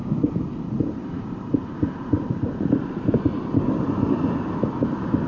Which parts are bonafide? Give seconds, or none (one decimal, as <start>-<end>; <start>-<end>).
3.2-5.3